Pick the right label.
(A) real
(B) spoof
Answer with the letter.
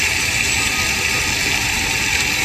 A